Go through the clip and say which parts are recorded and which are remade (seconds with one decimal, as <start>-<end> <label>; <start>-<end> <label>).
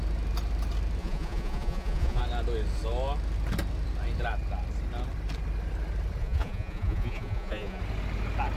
0.0-1.0 recorded; 1.0-2.2 remade; 2.2-6.2 recorded; 6.2-7.8 remade; 7.8-8.6 recorded